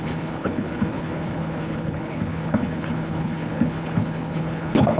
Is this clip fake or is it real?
fake